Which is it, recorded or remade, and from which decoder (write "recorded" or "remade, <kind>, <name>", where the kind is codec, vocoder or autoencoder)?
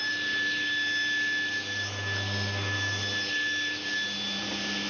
recorded